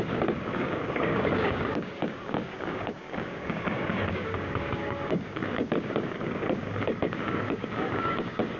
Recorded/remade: remade